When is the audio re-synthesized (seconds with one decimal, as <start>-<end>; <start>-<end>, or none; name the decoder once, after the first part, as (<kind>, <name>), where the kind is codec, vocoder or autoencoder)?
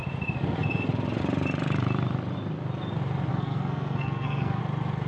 3.3-4.6 (codec, SNAC)